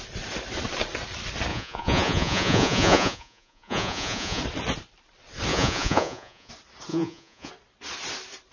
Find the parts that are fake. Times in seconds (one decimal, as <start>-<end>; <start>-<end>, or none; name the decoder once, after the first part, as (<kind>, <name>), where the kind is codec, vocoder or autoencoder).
1.5-4.4 (vocoder, Vocos); 5.5-6.5; 6.9-7.5